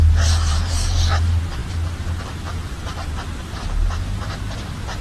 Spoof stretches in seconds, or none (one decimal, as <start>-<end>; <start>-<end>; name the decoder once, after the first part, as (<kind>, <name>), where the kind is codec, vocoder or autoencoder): 0.0-5.0 (vocoder, BigVGAN v2)